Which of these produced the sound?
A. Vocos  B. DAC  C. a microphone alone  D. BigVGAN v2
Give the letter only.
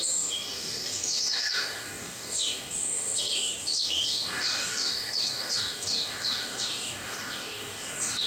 B